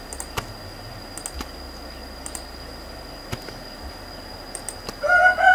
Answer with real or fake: real